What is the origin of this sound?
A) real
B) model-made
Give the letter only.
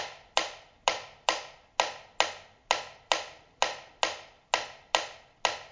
A